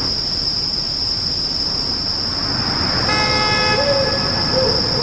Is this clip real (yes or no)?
yes